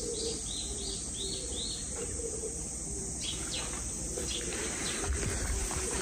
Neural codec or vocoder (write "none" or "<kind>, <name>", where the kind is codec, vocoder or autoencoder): vocoder, BigVGAN v2